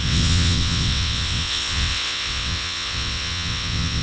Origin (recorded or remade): remade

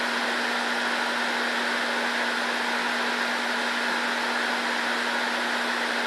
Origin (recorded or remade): recorded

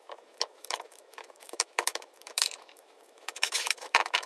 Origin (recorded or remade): remade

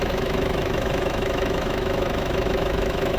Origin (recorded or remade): remade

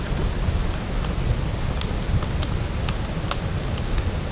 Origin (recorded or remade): recorded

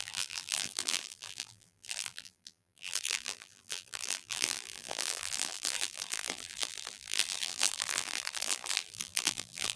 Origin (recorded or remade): remade